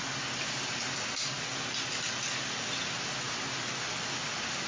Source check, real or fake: real